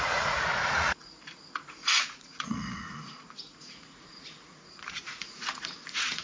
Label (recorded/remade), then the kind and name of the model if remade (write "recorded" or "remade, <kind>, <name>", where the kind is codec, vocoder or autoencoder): remade, vocoder, Vocos